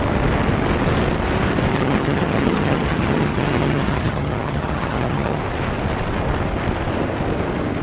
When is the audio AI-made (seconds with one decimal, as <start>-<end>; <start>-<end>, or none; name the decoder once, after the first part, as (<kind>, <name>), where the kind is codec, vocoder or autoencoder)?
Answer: 1.7-5.4 (vocoder, HiFi-GAN)